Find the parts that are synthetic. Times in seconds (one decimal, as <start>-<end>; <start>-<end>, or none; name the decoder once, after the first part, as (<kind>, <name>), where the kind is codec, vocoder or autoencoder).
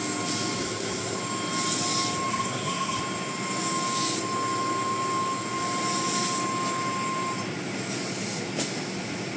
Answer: 0.6-1.2 (codec, SNAC); 2.3-3.0